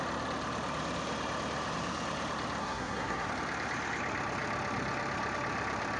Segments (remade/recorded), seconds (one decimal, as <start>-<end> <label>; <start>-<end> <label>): 0.0-2.6 recorded; 2.6-3.3 remade; 3.3-6.0 recorded